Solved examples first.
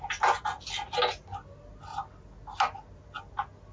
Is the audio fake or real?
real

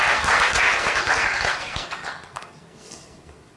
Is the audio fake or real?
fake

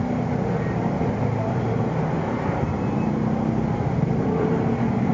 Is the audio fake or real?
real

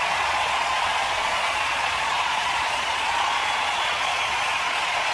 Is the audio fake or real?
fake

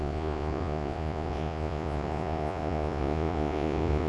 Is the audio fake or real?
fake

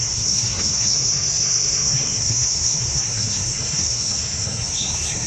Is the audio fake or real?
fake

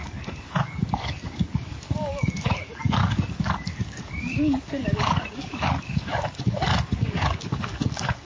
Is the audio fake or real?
fake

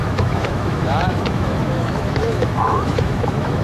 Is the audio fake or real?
fake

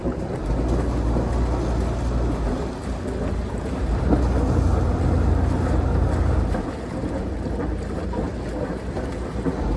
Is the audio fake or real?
real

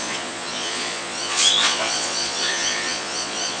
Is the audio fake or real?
fake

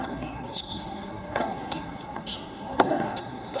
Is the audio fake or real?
fake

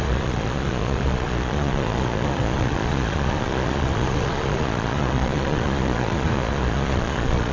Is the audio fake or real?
fake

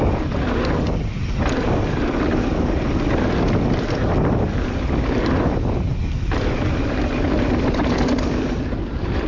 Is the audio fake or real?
real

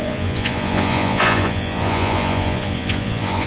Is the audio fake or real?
fake